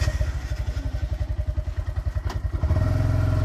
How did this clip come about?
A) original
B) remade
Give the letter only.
A